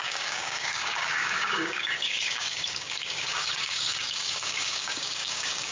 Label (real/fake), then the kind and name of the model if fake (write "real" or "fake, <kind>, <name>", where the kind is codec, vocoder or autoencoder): fake, codec, DAC